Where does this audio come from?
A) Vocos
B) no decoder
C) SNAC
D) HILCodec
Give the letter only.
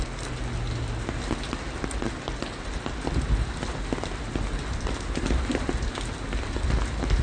B